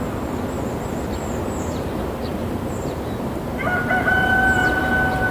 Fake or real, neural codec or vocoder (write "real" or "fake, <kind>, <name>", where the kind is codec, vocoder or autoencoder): real